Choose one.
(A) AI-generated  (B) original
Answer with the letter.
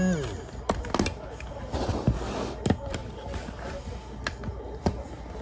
B